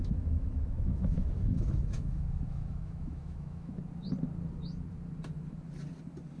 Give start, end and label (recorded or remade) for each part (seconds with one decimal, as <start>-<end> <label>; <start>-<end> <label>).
0.0-3.8 remade; 3.8-6.4 recorded